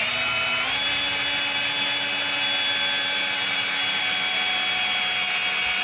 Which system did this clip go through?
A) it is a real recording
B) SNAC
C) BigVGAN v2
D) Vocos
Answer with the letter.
A